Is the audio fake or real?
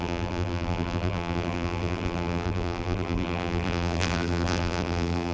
fake